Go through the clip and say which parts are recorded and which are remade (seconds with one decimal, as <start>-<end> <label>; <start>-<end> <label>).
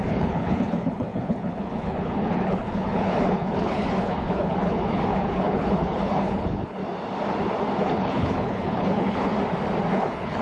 0.0-6.8 remade; 6.8-7.8 recorded; 7.8-9.3 remade; 9.3-9.9 recorded; 9.9-10.4 remade